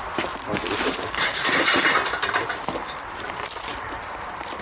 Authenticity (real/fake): fake